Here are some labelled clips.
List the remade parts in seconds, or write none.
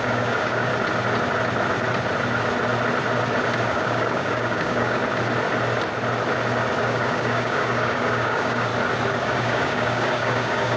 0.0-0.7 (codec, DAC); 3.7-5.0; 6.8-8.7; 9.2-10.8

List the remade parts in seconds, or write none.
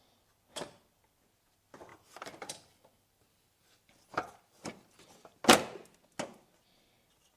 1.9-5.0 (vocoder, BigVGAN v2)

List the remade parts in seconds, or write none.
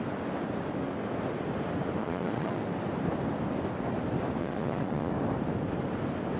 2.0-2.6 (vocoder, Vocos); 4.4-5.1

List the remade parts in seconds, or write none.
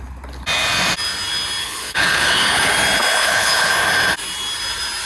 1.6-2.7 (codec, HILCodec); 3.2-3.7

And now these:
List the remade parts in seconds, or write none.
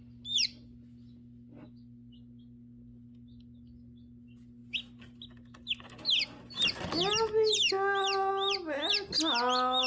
none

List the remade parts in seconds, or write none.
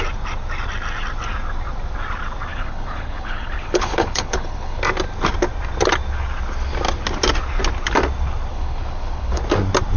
2.5-4.8 (codec, HILCodec); 8.5-9.4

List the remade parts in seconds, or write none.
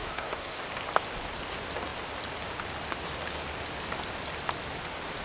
0.0-0.6 (codec, SNAC)